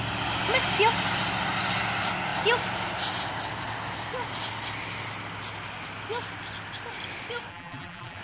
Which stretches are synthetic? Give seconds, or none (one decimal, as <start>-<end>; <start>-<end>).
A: 7.5-8.2